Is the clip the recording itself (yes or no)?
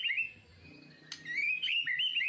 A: yes